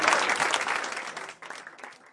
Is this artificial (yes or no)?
no